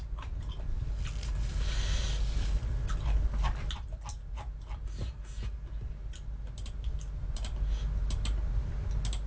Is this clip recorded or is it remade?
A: recorded